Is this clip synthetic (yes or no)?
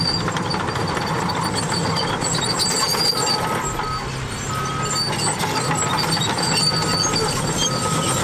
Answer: no